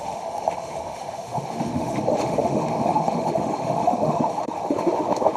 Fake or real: fake